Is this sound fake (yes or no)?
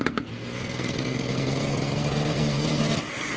yes